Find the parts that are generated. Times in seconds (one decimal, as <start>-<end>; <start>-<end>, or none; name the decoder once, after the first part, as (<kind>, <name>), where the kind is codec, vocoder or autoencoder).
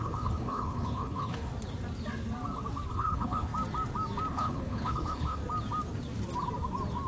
0.0-1.5 (codec, HILCodec); 2.9-3.5; 4.3-5.4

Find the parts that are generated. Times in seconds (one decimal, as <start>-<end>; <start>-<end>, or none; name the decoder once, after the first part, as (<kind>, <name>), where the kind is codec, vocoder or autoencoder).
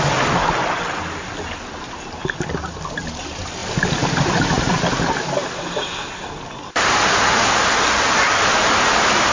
none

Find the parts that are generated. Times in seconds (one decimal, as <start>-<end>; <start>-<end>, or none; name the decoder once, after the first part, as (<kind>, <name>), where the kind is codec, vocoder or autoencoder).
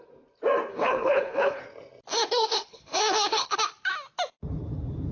0.7-1.6 (codec, HILCodec); 2.1-3.6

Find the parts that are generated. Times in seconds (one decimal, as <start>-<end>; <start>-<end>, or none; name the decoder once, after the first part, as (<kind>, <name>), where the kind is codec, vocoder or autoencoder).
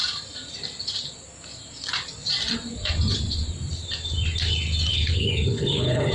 4.9-6.1 (codec, HILCodec)